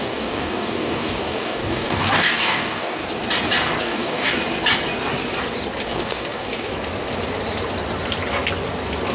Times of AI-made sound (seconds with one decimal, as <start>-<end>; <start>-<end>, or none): 0.0-3.0; 3.8-4.4; 5.8-6.7